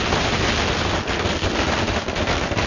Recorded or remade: recorded